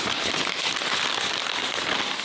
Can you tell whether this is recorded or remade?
recorded